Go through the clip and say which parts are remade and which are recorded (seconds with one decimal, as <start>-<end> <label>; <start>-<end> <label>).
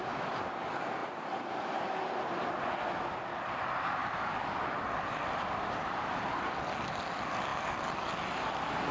0.0-4.0 recorded; 4.0-6.5 remade; 6.5-7.5 recorded; 7.5-8.9 remade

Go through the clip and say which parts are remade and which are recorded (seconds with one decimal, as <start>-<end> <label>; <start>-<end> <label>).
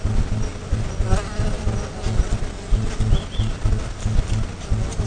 0.0-5.1 recorded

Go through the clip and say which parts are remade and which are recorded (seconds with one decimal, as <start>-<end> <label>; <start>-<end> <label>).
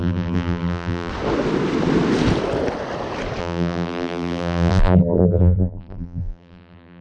0.0-1.1 remade; 1.1-3.4 recorded; 3.4-7.0 remade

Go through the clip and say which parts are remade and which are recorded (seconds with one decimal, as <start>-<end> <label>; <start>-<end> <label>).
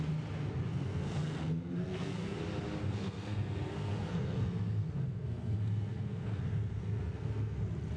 0.0-0.7 recorded; 0.7-2.4 remade; 2.4-2.8 recorded; 2.8-7.6 remade; 7.6-8.0 recorded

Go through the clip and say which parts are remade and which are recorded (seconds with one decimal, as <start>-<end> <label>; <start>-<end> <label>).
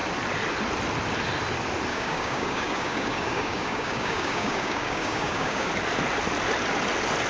0.0-1.9 recorded; 1.9-5.7 remade; 5.7-7.3 recorded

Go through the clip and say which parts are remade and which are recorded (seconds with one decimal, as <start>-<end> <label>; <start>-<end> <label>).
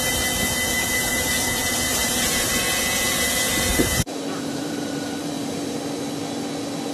0.0-1.1 recorded; 1.1-2.5 remade; 2.5-3.7 recorded; 3.7-5.8 remade; 5.8-6.9 recorded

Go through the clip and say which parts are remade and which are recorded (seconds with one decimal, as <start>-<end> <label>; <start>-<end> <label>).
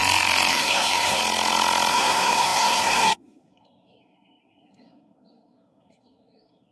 0.0-0.5 recorded; 0.5-1.2 remade; 1.2-1.9 recorded; 1.9-6.7 remade